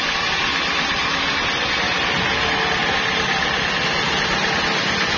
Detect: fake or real real